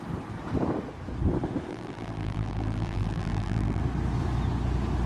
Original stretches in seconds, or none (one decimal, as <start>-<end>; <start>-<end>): 0.0-1.7; 3.8-5.1